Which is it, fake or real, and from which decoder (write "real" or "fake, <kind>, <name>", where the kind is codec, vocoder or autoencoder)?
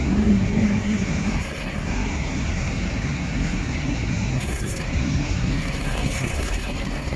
fake, codec, SNAC